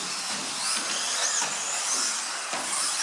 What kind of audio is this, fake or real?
real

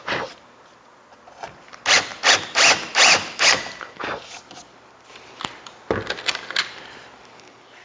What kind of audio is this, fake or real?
real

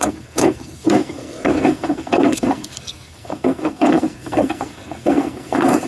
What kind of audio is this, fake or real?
fake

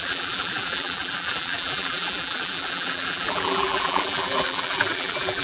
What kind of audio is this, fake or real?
fake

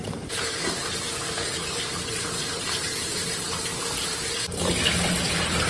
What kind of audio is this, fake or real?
fake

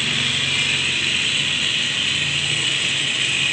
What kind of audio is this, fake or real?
real